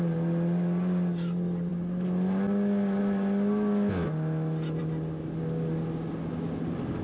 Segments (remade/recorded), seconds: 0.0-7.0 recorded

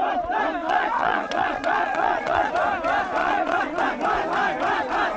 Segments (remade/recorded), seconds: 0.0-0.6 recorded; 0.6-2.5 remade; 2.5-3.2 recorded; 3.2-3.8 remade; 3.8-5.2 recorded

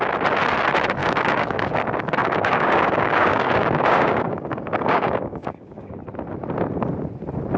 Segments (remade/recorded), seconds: 0.0-1.0 recorded; 1.0-1.7 remade; 1.7-2.2 recorded; 2.2-6.0 remade; 6.0-7.6 recorded

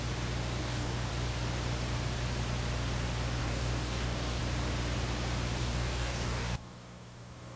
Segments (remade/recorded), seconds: 0.0-0.6 recorded; 0.6-1.1 remade; 1.1-3.4 recorded; 3.4-4.4 remade; 4.4-5.6 recorded; 5.6-7.6 remade

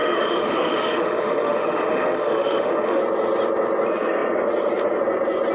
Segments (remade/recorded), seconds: 0.0-3.0 remade; 3.0-5.5 recorded